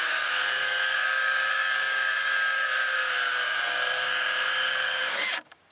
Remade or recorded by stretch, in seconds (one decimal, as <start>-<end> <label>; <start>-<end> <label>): 0.0-5.7 remade